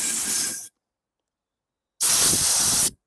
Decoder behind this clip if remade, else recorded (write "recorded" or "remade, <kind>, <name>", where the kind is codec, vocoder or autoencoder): recorded